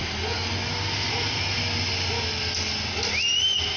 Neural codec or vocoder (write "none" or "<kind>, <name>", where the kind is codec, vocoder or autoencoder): none